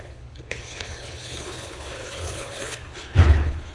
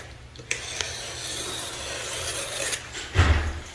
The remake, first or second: first